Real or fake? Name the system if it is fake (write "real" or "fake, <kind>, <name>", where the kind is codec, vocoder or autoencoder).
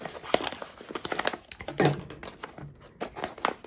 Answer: real